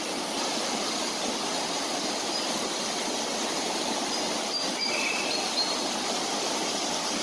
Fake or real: fake